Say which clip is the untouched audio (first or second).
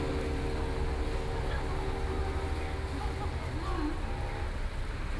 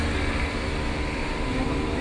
first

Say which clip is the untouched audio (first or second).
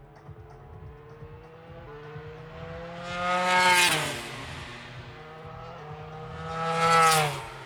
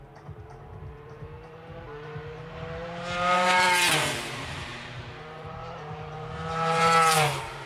first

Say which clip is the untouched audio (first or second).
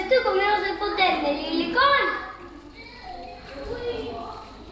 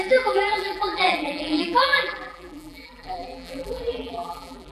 first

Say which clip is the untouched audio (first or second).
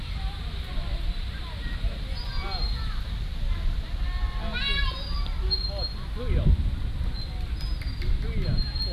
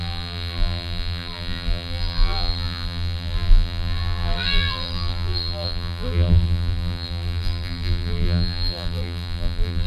first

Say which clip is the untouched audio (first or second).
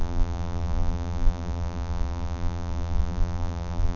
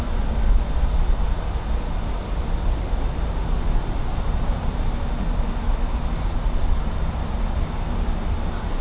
second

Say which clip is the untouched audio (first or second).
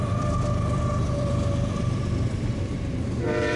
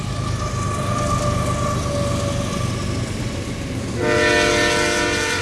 second